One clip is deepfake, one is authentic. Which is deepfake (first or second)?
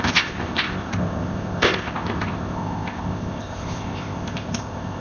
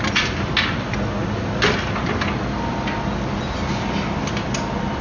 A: first